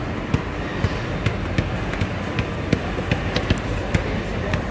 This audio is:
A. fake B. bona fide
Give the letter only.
B